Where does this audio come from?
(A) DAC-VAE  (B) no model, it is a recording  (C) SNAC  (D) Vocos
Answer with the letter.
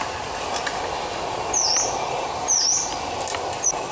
B